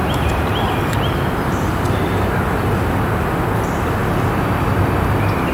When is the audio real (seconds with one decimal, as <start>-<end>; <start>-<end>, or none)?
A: 2.4-5.5